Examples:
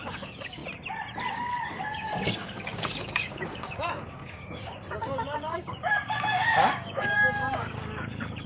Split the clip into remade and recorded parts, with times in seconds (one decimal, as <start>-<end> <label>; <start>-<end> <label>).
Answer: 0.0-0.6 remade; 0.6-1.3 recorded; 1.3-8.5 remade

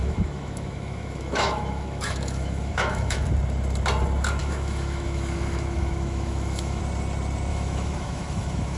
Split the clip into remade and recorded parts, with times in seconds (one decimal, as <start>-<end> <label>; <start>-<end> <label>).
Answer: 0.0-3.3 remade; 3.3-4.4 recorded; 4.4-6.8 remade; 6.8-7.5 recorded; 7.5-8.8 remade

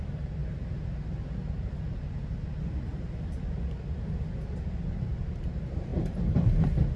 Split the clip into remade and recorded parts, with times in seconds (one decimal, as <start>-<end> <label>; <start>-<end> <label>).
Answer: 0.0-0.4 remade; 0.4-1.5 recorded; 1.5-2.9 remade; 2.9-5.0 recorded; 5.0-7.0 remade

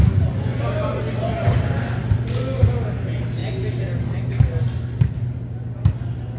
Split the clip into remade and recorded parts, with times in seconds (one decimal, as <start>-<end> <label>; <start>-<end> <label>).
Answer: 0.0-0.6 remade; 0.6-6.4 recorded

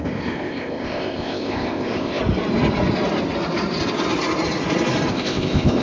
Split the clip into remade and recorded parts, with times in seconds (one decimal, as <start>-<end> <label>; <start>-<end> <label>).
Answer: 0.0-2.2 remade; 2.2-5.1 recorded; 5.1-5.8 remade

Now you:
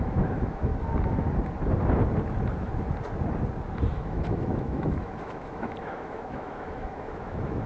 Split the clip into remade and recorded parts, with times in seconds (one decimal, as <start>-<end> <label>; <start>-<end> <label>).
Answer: 0.0-0.7 remade; 0.7-3.9 recorded; 3.9-7.7 remade

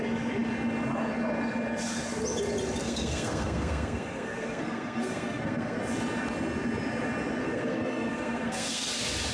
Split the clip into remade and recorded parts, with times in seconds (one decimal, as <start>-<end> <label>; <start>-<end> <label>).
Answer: 0.0-2.8 recorded; 2.8-5.8 remade; 5.8-7.4 recorded; 7.4-8.9 remade; 8.9-9.3 recorded

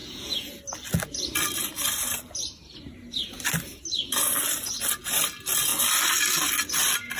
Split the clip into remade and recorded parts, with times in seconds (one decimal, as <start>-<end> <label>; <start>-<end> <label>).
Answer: 0.0-0.5 remade; 0.5-7.2 recorded